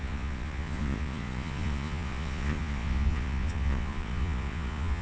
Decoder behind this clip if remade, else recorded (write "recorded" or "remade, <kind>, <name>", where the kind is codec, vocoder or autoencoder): remade, vocoder, Vocos